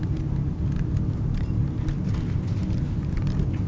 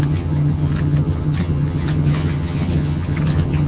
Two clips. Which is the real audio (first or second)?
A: first